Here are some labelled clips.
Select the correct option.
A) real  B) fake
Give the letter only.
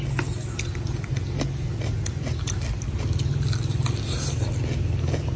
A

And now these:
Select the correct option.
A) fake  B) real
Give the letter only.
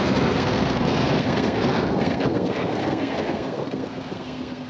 A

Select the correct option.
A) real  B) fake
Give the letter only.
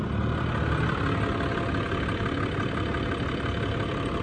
A